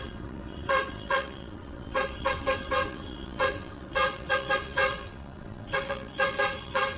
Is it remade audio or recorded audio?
remade